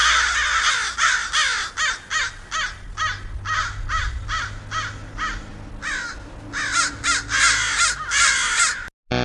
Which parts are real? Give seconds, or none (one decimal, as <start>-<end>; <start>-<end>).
0.0-9.2